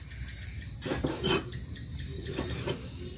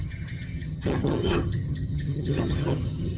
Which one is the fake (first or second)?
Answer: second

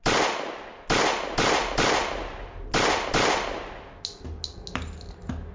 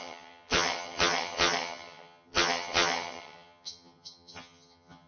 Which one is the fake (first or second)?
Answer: second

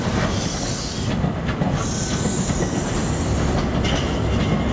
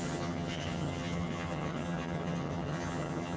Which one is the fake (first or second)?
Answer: second